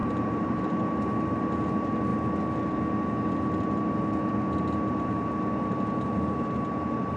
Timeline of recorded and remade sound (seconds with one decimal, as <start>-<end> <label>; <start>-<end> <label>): 0.0-0.6 remade; 0.6-7.2 recorded